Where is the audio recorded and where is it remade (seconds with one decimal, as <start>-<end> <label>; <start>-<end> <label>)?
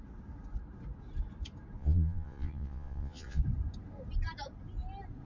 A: 0.0-1.8 recorded; 1.8-3.4 remade; 3.4-5.2 recorded